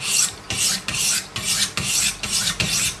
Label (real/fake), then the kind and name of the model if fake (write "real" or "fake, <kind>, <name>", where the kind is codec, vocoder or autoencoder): fake, vocoder, BigVGAN v2